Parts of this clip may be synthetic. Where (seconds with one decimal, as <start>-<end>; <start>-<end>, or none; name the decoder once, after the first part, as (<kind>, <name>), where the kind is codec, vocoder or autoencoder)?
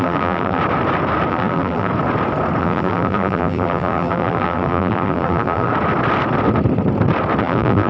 0.0-0.6 (vocoder, BigVGAN v2); 1.3-1.9; 2.6-5.7; 7.4-7.9